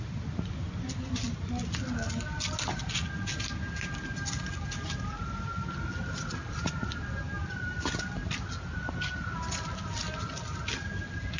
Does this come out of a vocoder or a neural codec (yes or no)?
no